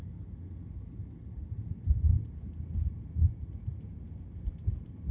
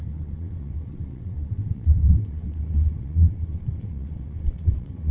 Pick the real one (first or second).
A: first